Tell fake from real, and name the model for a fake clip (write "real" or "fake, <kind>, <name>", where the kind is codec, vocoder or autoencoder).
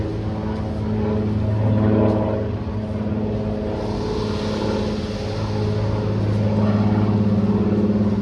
real